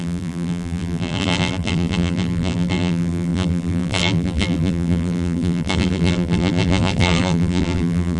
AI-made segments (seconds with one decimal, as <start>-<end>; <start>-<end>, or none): 0.0-8.2